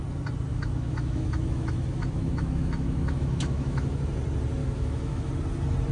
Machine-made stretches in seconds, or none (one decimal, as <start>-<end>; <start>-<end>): 0.5-4.0; 4.6-5.3

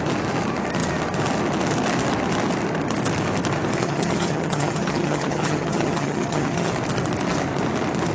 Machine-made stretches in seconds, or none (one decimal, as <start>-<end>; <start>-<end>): 3.8-6.7

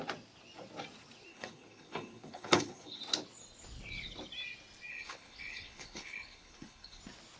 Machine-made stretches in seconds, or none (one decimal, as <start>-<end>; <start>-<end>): 1.3-3.0; 4.9-7.0

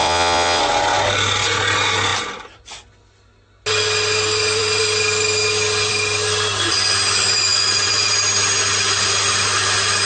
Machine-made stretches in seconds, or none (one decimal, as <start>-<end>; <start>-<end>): 0.0-0.6

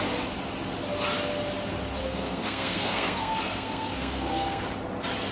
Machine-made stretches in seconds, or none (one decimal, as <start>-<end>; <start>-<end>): 2.0-4.6

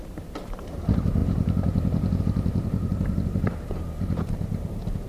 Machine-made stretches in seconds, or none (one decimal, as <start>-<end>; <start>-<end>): 0.0-5.1

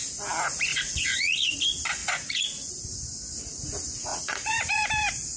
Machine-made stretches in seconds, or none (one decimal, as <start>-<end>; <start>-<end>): 0.7-1.6; 2.0-2.7; 4.1-4.9